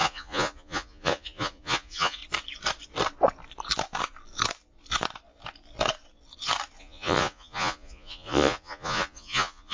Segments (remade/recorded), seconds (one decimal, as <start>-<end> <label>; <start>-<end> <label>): 0.0-2.2 remade; 2.2-6.8 recorded; 6.8-9.7 remade